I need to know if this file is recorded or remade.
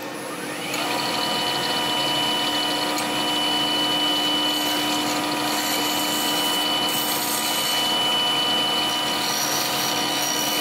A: recorded